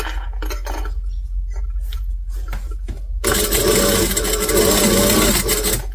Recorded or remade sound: recorded